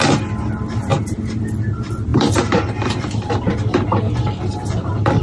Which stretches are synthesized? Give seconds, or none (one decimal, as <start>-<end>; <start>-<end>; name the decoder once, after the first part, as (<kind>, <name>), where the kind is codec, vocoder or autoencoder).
none

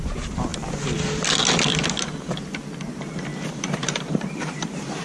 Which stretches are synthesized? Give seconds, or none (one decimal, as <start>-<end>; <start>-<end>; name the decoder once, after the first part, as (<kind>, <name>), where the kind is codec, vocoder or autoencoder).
0.0-0.5 (vocoder, BigVGAN v2); 2.9-5.0